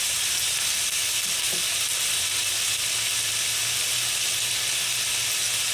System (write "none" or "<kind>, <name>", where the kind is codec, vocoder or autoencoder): none